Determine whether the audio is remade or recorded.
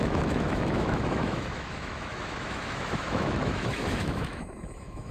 remade